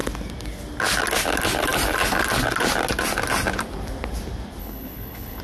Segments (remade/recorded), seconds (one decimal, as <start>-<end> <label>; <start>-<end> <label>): 0.0-4.6 recorded; 4.6-5.4 remade